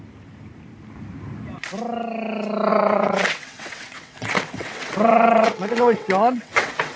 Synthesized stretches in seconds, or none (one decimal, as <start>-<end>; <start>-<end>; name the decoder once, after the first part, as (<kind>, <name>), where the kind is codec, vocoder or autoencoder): 2.7-7.0 (vocoder, WaveNeXt)